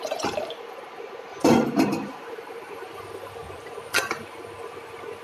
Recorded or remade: recorded